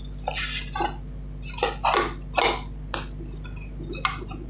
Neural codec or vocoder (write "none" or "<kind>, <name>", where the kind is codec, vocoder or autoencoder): none